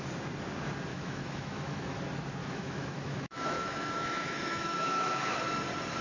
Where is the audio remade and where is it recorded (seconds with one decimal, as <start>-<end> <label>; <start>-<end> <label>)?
0.0-0.9 recorded; 0.9-2.0 remade; 2.0-2.4 recorded; 2.4-5.4 remade; 5.4-6.0 recorded